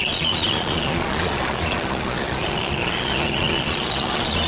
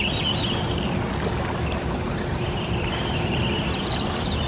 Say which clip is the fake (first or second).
first